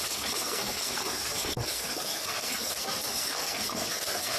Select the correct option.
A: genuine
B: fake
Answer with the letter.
B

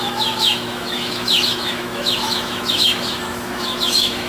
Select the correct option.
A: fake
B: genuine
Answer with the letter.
A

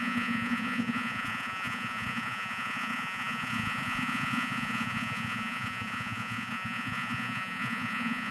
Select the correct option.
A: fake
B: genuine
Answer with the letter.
A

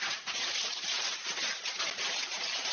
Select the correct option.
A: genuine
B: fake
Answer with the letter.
A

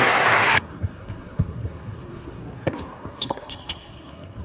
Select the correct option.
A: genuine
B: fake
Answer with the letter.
B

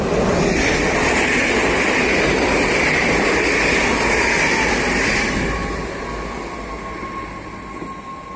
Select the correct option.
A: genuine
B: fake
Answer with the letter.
A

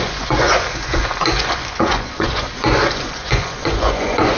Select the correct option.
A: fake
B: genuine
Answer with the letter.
A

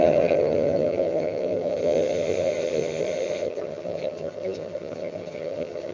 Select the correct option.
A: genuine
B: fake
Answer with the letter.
B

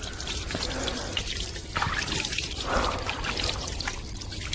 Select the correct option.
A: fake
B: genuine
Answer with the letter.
B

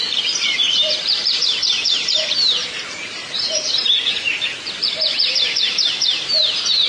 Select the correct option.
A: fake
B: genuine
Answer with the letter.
A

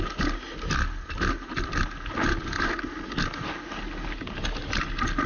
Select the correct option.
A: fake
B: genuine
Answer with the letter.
B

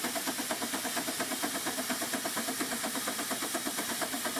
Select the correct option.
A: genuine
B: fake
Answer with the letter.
A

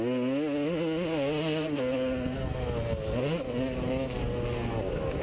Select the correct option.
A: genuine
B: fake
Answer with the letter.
A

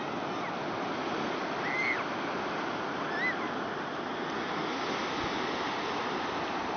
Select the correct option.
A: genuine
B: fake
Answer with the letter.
A